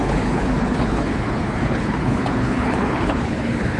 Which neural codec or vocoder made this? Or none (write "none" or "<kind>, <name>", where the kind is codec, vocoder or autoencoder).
codec, HILCodec